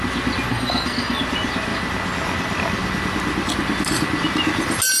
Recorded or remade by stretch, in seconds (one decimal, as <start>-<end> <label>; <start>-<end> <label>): 0.0-0.5 recorded; 0.5-1.2 remade; 1.2-5.0 recorded